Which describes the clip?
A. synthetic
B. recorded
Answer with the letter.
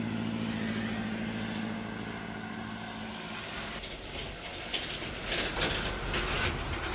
B